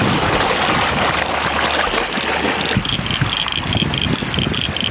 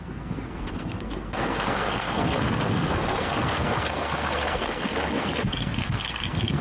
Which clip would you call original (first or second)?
first